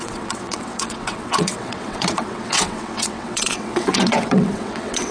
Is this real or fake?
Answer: fake